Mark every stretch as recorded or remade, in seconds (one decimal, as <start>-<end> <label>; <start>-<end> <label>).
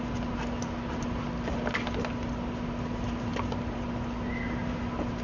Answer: 0.0-5.2 recorded